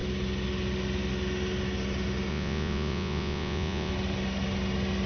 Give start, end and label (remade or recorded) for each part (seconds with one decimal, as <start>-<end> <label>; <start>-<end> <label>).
0.0-2.3 recorded; 2.3-3.9 remade; 3.9-5.1 recorded